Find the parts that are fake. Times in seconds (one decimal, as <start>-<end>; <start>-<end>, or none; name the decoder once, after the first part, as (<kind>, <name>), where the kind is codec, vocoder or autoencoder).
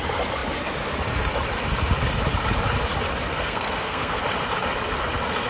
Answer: 3.3-4.2 (codec, SNAC)